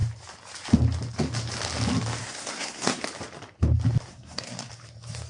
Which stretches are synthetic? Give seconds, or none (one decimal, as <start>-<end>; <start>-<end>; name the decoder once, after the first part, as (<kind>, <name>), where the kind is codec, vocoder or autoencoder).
2.2-3.0 (codec, SNAC); 4.1-4.7